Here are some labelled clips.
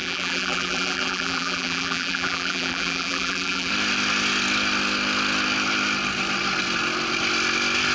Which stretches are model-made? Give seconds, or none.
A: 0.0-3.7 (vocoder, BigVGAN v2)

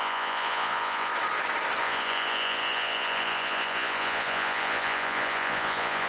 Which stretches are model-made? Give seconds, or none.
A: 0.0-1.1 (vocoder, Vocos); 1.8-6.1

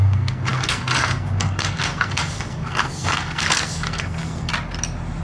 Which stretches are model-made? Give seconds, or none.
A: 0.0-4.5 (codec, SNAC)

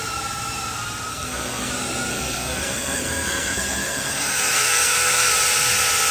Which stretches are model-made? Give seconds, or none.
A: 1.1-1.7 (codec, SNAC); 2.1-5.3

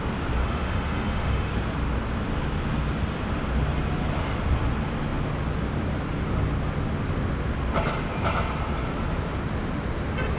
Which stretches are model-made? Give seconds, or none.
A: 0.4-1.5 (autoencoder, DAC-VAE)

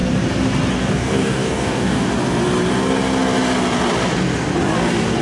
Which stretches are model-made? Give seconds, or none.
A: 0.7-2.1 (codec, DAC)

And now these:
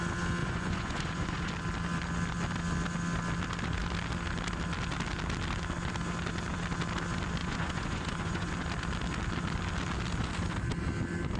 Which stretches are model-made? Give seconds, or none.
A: 0.4-1.5 (vocoder, Vocos); 7.4-8.5

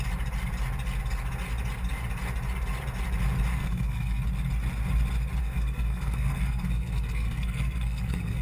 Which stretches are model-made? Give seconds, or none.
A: 3.5-4.2 (codec, SNAC); 5.4-8.4